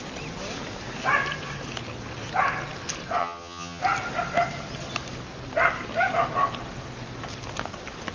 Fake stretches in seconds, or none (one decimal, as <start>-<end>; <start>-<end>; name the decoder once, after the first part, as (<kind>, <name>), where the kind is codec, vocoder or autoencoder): 3.2-3.8 (vocoder, HiFi-GAN)